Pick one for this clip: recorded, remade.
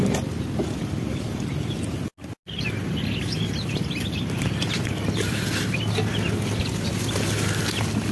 recorded